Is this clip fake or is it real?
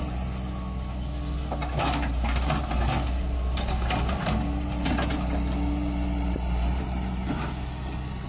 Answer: real